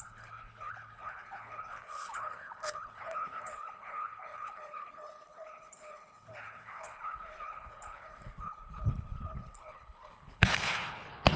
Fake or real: fake